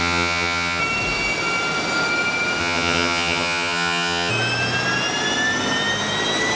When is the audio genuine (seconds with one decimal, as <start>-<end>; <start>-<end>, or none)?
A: 0.8-2.6; 4.3-6.6